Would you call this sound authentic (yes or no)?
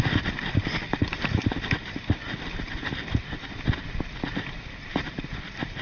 yes